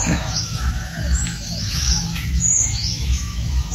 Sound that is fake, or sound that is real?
fake